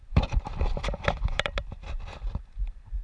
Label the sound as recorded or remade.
remade